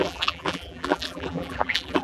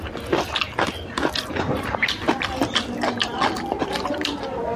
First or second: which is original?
second